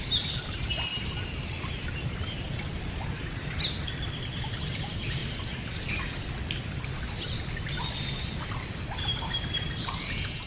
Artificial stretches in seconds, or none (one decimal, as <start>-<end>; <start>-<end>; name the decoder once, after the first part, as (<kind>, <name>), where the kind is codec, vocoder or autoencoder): 0.0-0.9 (vocoder, BigVGAN v2); 1.4-5.2; 8.1-10.5